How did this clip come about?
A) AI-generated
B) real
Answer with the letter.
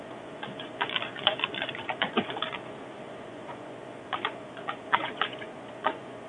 A